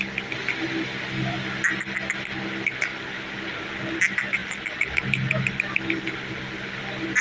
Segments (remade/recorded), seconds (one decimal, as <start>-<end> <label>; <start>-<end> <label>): 0.0-7.2 recorded